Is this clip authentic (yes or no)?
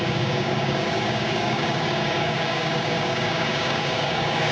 no